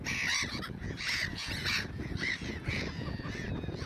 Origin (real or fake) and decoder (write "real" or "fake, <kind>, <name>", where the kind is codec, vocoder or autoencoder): fake, vocoder, Vocos